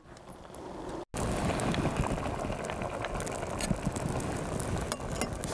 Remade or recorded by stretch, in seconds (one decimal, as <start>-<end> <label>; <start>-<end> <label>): 0.0-5.5 recorded